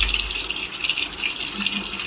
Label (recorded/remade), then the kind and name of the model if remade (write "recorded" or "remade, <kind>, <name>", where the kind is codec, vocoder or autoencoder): recorded